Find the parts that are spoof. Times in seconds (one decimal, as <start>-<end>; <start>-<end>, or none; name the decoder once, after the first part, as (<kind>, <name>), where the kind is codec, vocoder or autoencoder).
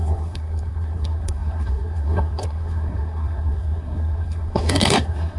0.0-5.4 (codec, SNAC)